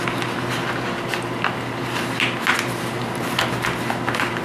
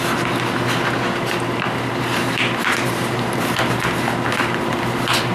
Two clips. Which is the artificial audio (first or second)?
second